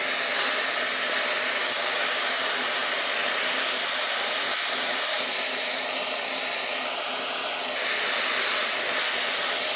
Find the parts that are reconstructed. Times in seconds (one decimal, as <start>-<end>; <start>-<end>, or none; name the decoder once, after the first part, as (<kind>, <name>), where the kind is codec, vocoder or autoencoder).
1.6-2.4 (codec, DAC)